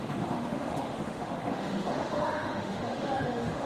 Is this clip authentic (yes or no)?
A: no